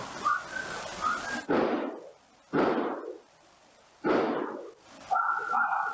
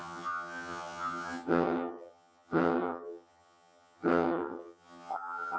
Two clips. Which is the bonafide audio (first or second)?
first